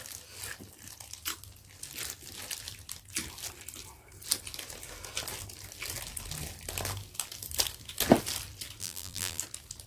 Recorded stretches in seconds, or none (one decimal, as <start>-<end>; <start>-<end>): 0.0-8.8; 9.4-9.9